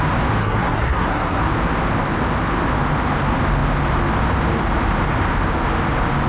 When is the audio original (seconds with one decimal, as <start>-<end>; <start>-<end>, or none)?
0.0-0.4; 1.4-6.3